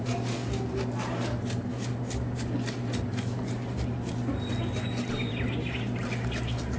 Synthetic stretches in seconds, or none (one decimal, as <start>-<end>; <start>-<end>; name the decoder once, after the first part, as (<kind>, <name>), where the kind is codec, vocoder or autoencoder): none